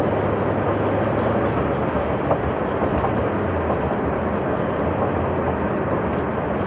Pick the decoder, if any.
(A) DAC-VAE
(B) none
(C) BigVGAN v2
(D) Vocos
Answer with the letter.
B